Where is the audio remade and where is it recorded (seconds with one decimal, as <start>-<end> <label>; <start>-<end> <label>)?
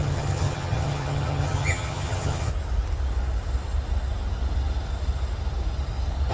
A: 0.0-2.5 remade; 2.5-6.3 recorded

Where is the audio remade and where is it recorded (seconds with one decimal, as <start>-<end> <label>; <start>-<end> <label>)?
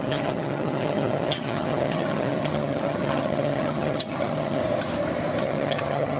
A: 0.0-4.6 remade; 4.6-5.4 recorded; 5.4-6.2 remade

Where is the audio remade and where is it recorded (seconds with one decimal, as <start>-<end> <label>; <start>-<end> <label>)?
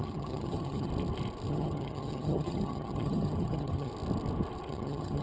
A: 0.0-0.9 remade; 0.9-1.5 recorded; 1.5-3.9 remade; 3.9-4.7 recorded; 4.7-5.2 remade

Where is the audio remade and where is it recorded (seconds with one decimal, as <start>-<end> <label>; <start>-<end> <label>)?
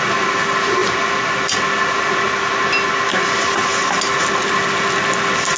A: 0.0-5.6 recorded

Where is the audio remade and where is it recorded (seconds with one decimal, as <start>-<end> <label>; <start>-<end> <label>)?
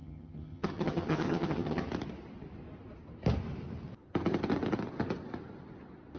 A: 0.0-1.9 remade; 1.9-6.2 recorded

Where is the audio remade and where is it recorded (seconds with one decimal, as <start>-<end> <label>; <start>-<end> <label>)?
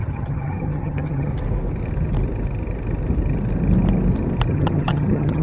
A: 0.0-1.3 remade; 1.3-4.5 recorded; 4.5-5.4 remade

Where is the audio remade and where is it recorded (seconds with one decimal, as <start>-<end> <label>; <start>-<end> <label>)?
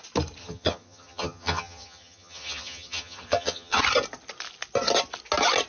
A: 0.0-0.4 recorded; 0.4-3.8 remade; 3.8-5.7 recorded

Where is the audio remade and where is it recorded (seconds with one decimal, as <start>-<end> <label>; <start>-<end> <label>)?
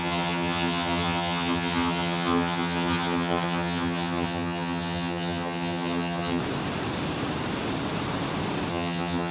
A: 0.0-6.4 remade; 6.4-8.7 recorded; 8.7-9.3 remade